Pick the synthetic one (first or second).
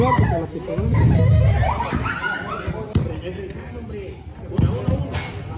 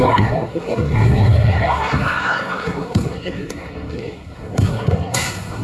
second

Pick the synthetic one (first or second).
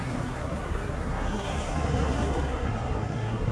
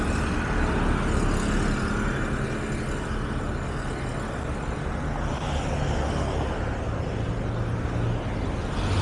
first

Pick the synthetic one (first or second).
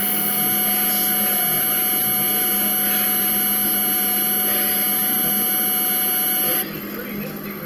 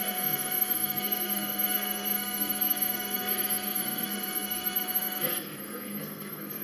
second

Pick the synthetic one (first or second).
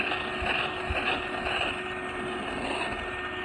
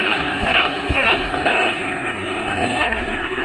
second